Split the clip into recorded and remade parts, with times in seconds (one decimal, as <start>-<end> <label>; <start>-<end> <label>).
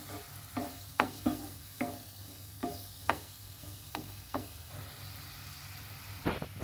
0.0-0.7 recorded; 0.7-4.7 remade; 4.7-6.6 recorded